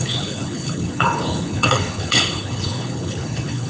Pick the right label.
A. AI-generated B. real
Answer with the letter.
A